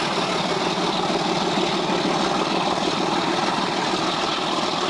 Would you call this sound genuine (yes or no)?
yes